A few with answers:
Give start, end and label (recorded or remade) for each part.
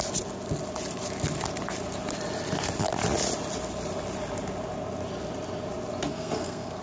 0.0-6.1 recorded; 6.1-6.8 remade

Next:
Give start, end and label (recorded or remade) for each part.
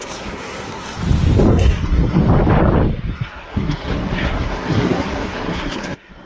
0.0-1.0 remade; 1.0-1.5 recorded; 1.5-2.2 remade; 2.2-3.1 recorded; 3.1-6.3 remade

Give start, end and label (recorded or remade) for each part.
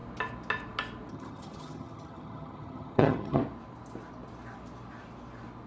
0.0-1.1 recorded; 1.1-3.4 remade; 3.4-5.7 recorded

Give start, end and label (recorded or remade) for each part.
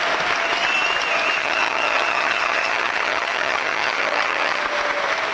0.0-1.4 recorded; 1.4-4.6 remade; 4.6-5.3 recorded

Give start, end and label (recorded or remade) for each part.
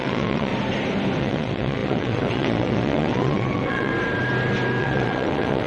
0.0-0.5 remade; 0.5-1.2 recorded; 1.2-3.9 remade; 3.9-4.8 recorded; 4.8-5.7 remade